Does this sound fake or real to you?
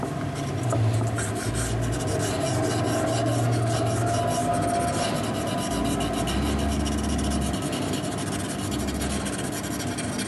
real